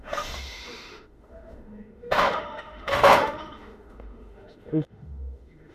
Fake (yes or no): yes